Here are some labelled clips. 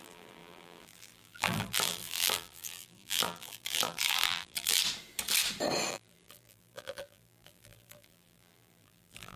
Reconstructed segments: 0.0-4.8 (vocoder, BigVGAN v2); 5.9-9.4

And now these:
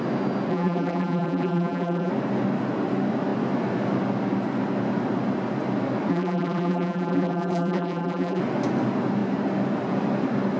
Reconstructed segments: 0.5-2.1 (vocoder, BigVGAN v2); 6.1-8.4